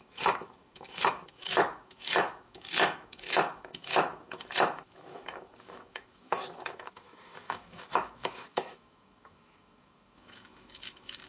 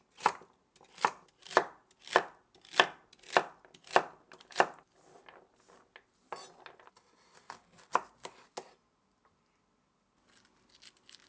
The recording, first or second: second